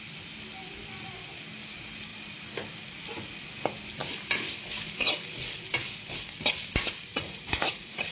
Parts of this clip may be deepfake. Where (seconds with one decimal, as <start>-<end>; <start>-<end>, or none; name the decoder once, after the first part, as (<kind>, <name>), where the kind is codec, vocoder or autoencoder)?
7.1-8.1 (vocoder, Vocos)